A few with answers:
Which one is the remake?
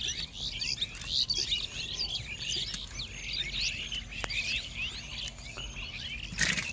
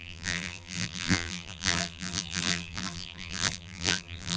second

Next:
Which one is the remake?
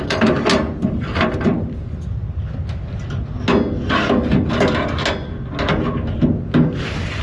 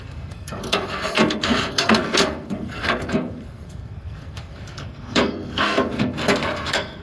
second